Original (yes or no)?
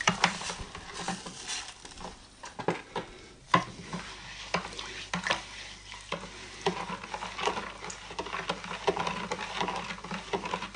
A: yes